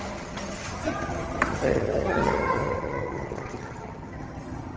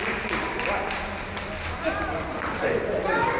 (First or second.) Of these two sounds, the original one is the second